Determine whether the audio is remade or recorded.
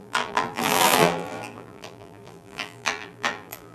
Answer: remade